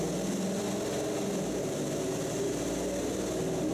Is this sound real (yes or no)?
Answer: yes